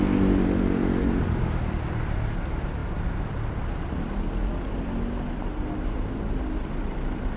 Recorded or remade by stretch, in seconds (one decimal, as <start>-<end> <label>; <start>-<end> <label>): 0.0-7.4 recorded